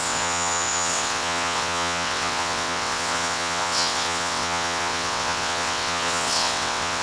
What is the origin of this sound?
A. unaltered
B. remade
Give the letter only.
B